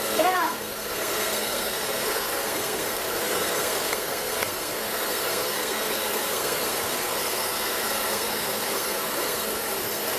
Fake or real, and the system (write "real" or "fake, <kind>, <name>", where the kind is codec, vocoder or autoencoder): fake, codec, SNAC